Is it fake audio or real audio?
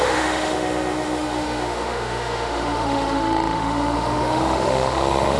fake